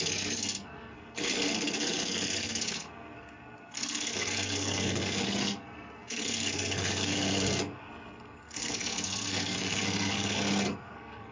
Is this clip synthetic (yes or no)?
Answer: yes